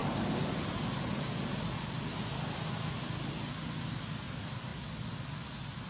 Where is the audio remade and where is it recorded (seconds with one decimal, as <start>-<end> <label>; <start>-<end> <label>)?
0.0-5.9 recorded